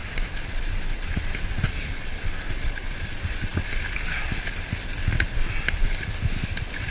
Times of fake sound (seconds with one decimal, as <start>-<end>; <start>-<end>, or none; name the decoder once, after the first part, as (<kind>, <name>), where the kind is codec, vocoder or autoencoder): none